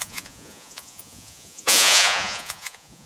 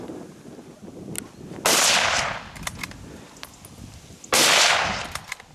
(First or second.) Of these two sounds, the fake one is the first